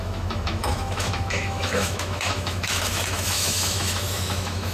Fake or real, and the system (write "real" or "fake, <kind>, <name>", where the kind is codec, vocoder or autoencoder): fake, autoencoder, DAC-VAE